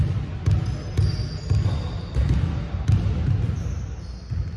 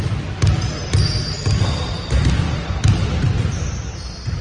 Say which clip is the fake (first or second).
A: second